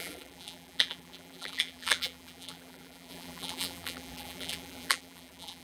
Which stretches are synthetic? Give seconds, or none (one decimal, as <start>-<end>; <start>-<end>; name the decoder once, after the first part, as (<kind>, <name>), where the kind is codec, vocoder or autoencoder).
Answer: 0.0-5.6 (vocoder, BigVGAN v2)